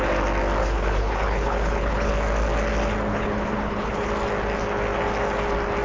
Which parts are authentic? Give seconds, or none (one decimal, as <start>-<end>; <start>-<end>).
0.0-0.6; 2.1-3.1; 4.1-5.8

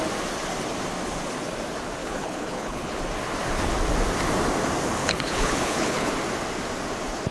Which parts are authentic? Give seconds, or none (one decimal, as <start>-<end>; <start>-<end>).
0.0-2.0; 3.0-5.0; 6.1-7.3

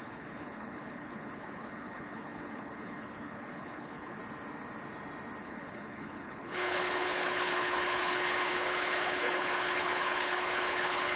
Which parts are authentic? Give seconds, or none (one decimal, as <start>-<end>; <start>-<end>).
4.2-5.4